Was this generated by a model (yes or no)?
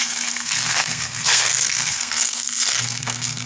yes